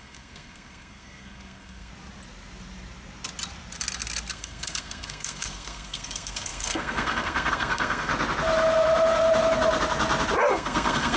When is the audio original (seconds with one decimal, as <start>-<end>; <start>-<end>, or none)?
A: 1.9-4.3; 8.1-10.5